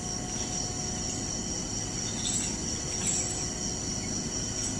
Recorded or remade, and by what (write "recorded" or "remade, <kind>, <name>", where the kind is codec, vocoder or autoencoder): remade, vocoder, BigVGAN v2